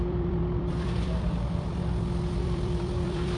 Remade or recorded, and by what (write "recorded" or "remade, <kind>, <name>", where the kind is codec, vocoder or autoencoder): remade, vocoder, BigVGAN v2